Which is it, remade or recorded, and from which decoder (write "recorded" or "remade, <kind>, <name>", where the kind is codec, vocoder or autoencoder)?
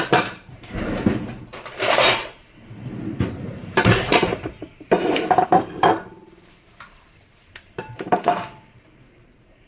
remade, vocoder, BigVGAN v2